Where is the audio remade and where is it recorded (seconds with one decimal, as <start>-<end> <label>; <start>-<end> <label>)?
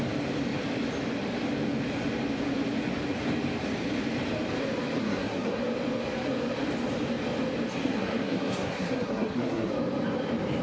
0.0-5.0 recorded; 5.0-5.6 remade; 5.6-7.7 recorded; 7.7-9.7 remade; 9.7-10.6 recorded